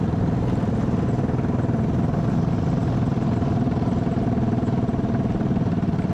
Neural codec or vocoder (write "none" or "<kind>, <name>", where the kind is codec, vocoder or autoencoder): none